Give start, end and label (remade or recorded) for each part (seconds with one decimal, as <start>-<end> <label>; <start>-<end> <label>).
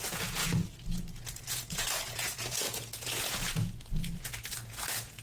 0.0-5.2 remade